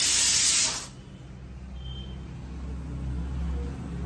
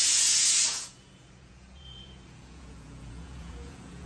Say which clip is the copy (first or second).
second